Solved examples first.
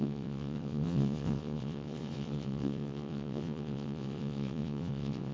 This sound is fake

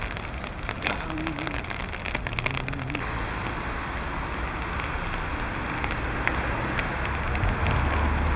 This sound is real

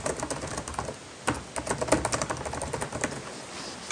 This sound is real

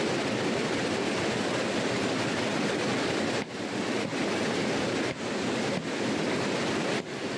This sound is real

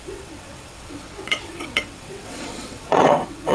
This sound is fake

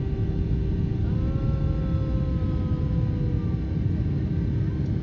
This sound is real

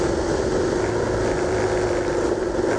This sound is real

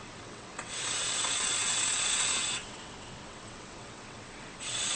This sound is fake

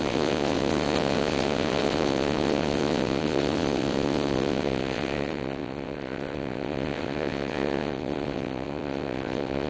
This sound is fake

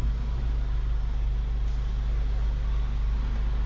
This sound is real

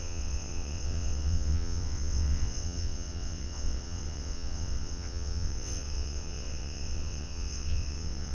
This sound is fake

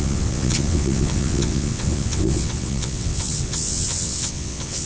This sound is fake